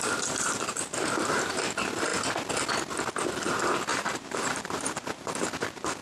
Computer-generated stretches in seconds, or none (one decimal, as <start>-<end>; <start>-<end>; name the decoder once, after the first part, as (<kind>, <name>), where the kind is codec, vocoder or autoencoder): 0.0-1.6 (vocoder, BigVGAN v2); 3.9-5.3